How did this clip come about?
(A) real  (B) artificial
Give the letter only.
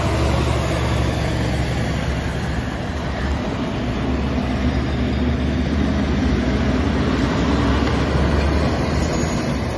A